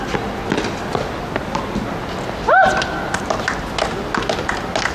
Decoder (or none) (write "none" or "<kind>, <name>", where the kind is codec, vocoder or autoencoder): none